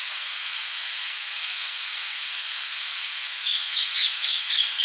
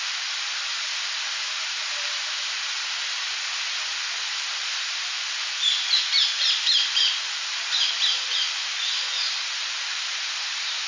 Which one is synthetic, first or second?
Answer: first